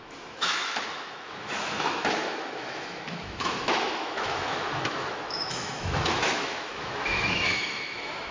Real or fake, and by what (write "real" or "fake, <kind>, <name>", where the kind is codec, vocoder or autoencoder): fake, autoencoder, DAC-VAE